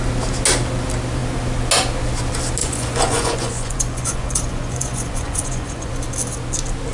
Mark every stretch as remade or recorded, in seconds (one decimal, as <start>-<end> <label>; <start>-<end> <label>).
0.0-2.6 recorded; 2.6-5.9 remade; 5.9-6.9 recorded